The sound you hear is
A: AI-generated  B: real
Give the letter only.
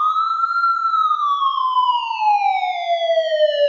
B